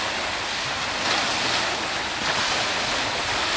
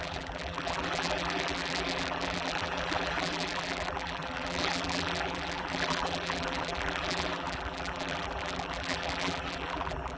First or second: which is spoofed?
second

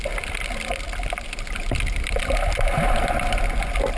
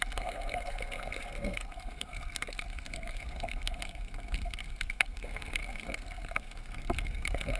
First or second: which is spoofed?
second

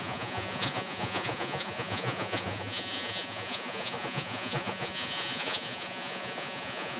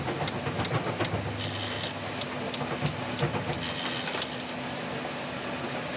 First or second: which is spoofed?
first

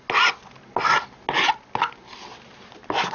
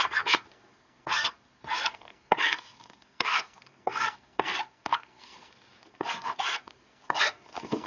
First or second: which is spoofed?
second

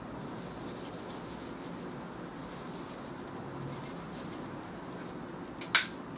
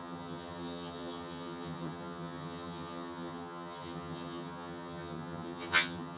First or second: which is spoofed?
second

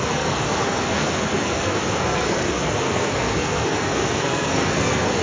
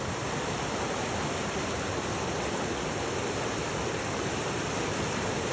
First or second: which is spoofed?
first